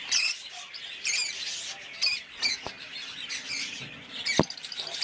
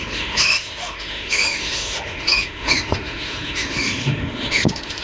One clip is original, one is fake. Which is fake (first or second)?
second